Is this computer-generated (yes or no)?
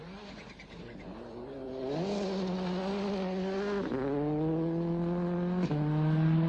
no